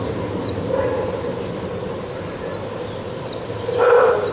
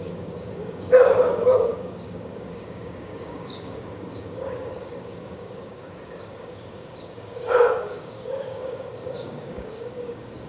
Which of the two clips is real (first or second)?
first